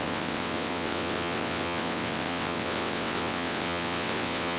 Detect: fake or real fake